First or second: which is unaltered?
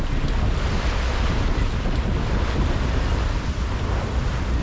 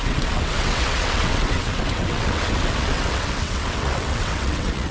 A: first